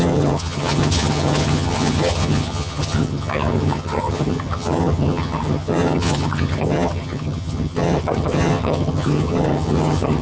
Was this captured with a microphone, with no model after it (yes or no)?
no